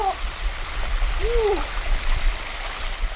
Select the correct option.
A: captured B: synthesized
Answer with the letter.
A